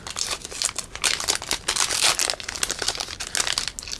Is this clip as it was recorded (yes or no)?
yes